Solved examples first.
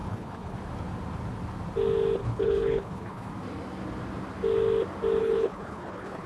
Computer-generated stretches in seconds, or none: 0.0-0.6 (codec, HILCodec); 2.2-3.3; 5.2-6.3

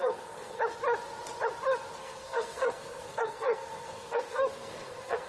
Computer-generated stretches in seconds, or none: 0.0-0.6 (codec, SNAC); 2.0-5.3

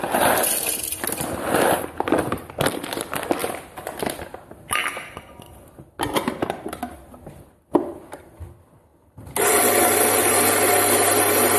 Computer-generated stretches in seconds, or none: none

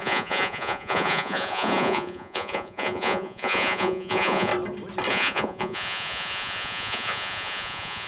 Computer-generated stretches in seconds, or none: 0.0-4.5 (vocoder, Vocos); 5.1-8.1

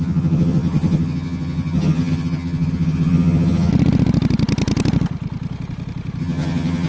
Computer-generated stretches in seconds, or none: 0.0-3.7 (vocoder, HiFi-GAN); 6.2-6.9

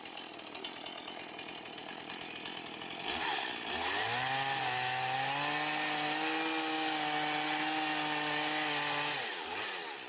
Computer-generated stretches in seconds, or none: 1.8-4.0 (vocoder, BigVGAN v2)

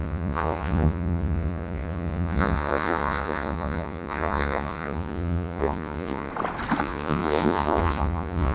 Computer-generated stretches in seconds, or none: 0.0-6.3 (vocoder, Vocos); 6.8-8.5

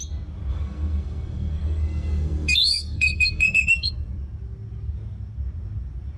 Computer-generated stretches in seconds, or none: 0.5-3.9 (codec, SNAC)